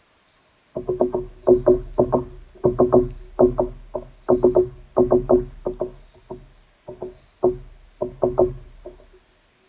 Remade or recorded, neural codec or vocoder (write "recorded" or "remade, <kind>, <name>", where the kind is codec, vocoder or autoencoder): recorded